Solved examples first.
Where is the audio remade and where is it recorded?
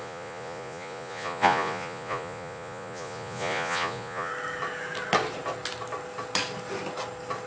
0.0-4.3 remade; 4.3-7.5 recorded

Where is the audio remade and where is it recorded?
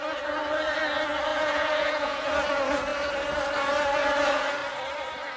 0.0-1.3 recorded; 1.3-2.3 remade; 2.3-5.4 recorded